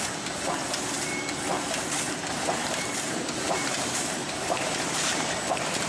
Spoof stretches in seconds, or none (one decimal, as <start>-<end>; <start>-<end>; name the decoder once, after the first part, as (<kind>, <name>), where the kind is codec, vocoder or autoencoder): 2.6-5.9 (vocoder, BigVGAN v2)